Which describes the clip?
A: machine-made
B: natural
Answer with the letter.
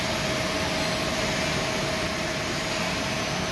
B